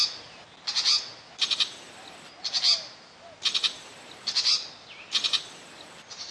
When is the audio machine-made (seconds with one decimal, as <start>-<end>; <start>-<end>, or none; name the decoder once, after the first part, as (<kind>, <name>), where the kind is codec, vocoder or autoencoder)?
none